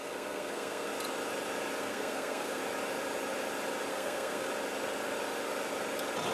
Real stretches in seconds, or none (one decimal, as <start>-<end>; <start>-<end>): 0.9-1.8; 2.6-3.9; 4.5-6.3